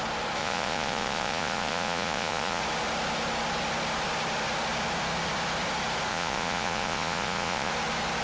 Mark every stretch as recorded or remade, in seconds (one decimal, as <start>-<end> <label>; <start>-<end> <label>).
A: 0.0-0.4 recorded; 0.4-2.6 remade; 2.6-6.1 recorded; 6.1-7.7 remade; 7.7-8.2 recorded